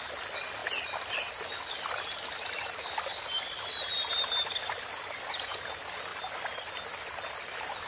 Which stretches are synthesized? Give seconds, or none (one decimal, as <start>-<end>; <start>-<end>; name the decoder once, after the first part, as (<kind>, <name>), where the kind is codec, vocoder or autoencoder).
none